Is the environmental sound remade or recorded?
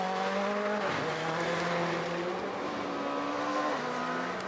recorded